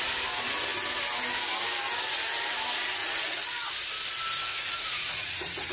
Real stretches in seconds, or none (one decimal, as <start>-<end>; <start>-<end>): 0.0-3.0; 3.7-4.5